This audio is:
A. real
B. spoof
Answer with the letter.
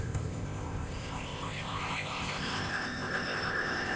B